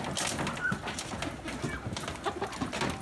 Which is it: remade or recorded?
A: recorded